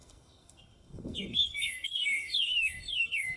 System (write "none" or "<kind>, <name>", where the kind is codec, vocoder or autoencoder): codec, SNAC